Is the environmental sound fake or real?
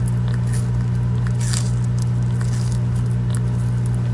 real